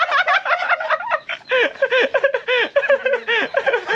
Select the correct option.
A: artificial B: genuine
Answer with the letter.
B